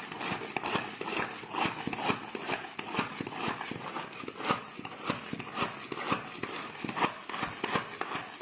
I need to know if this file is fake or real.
real